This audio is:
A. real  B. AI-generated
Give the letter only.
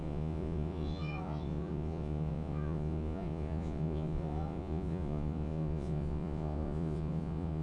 B